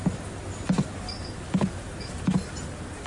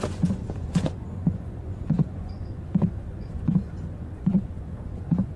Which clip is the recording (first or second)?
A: first